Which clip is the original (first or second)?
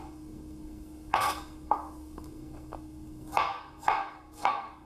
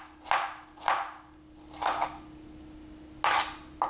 second